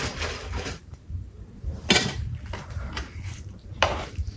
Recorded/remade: remade